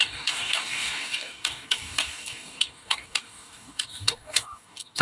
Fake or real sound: fake